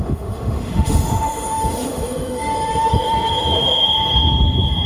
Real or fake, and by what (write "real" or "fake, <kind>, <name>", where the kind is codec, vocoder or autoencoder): fake, autoencoder, DAC-VAE